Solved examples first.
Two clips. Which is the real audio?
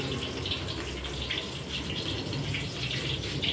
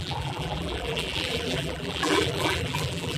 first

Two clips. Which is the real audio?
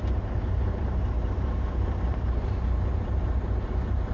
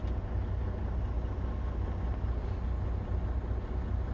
second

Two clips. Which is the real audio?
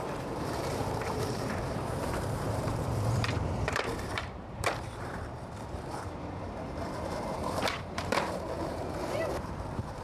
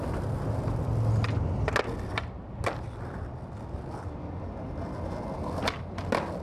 second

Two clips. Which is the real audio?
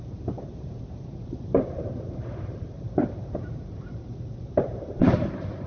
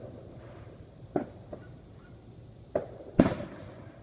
second